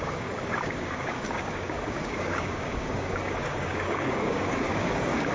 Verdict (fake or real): fake